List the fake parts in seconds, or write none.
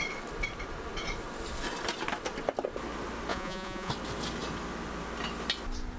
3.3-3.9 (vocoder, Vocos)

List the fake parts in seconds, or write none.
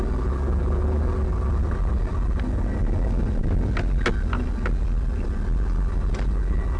none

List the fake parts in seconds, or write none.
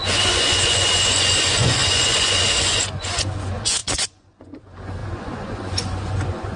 0.0-6.6 (vocoder, Vocos)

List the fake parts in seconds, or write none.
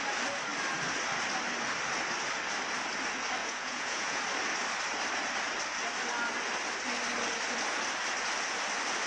3.4-4.2 (vocoder, Vocos)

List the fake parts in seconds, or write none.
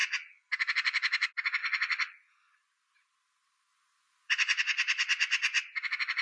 0.0-0.5 (vocoder, Vocos); 1.6-2.6; 3.7-4.6